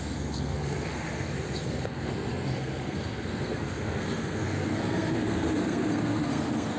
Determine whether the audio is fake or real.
fake